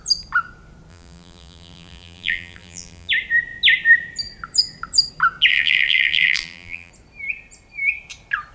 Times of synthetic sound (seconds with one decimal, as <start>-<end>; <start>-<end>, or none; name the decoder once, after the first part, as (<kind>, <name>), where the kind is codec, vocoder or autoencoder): 0.9-3.1 (vocoder, BigVGAN v2); 5.5-6.9